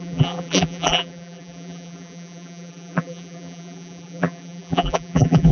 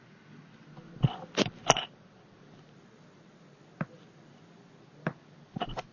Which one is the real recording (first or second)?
second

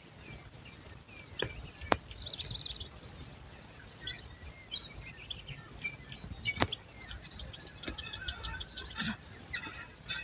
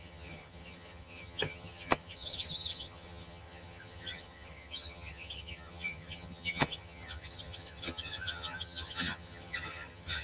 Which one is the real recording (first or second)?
first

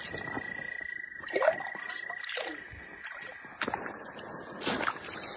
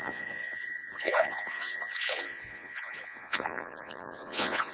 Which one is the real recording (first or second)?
first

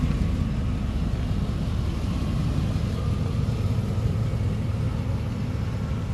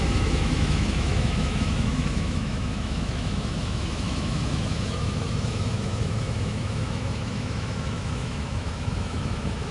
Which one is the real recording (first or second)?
first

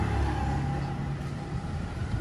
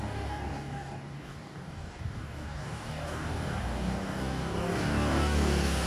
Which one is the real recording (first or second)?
first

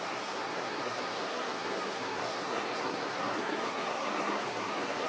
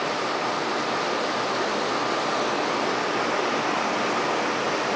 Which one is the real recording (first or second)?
second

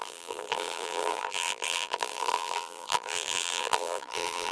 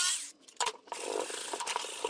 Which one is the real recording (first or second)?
second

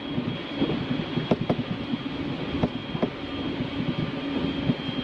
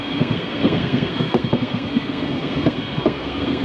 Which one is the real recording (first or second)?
first